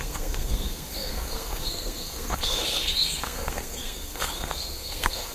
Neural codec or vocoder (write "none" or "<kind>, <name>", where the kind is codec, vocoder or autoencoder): codec, SNAC